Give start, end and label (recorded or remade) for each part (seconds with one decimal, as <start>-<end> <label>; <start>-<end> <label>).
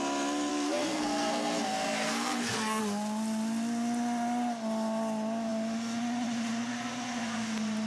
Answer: 0.0-0.5 recorded; 0.5-2.8 remade; 2.8-7.9 recorded